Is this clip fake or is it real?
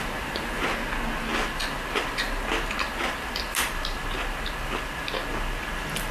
real